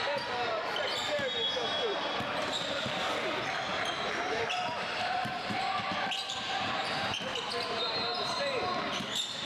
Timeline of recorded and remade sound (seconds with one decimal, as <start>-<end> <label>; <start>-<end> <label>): 0.0-1.9 recorded; 1.9-3.1 remade; 3.1-3.7 recorded; 3.7-8.6 remade; 8.6-9.4 recorded